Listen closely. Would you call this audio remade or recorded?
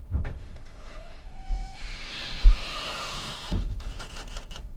remade